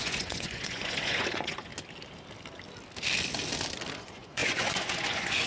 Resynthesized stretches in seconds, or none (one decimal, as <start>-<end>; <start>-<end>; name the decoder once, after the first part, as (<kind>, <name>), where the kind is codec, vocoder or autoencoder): 0.0-1.7 (vocoder, Vocos); 4.0-5.5